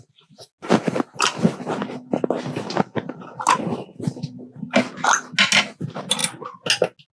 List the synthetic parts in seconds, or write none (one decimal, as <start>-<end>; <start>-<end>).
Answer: none

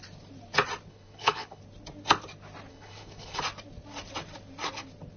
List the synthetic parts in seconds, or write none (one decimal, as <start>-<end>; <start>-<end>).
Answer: 0.9-1.6; 2.7-3.4